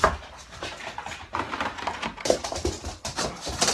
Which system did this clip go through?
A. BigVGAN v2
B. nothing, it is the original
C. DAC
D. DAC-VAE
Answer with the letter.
B